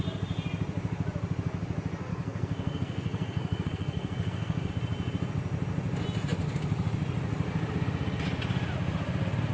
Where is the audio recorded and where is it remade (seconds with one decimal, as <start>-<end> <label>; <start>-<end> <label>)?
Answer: 0.0-2.1 recorded; 2.1-4.7 remade; 4.7-9.5 recorded